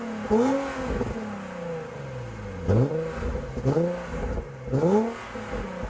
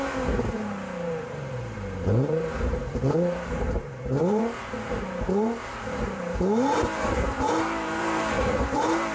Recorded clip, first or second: first